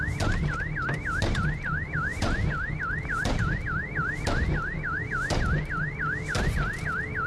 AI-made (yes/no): no